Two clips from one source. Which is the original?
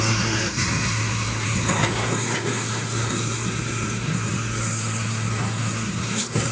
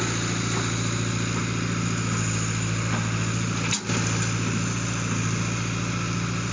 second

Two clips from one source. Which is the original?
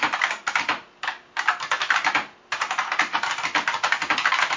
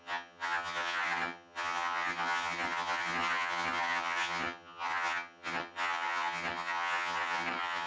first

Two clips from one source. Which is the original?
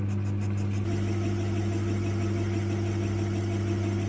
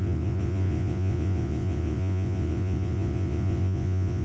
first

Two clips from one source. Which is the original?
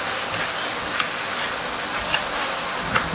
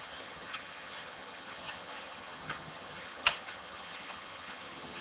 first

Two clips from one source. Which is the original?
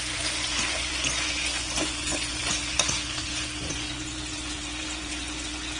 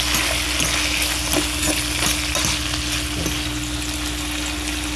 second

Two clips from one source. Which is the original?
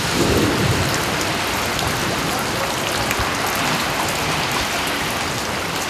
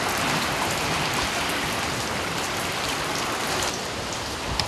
first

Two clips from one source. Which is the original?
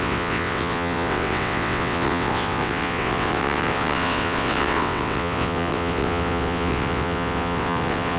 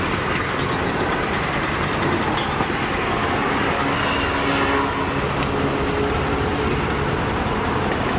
second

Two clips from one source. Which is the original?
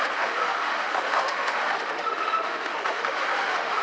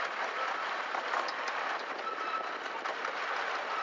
second